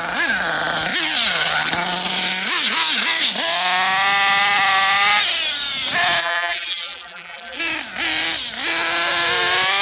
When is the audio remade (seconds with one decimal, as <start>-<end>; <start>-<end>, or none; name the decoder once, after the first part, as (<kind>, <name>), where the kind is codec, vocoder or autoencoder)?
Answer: 6.2-7.6 (vocoder, BigVGAN v2)